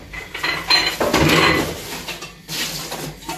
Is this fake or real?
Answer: real